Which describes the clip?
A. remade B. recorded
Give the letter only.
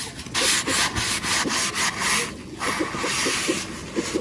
B